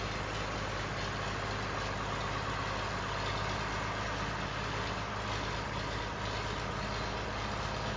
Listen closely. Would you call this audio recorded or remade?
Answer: recorded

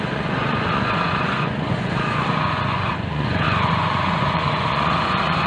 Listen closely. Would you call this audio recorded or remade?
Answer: remade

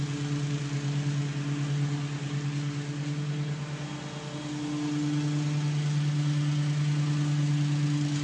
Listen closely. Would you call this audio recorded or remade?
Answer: recorded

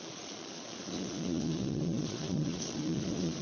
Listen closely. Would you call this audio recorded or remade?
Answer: remade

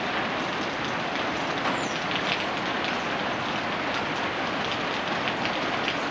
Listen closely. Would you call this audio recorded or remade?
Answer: recorded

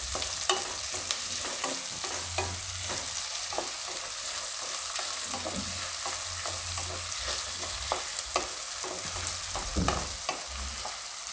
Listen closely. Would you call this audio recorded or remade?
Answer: recorded